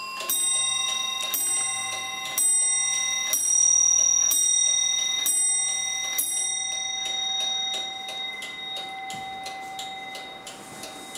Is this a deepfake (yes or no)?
no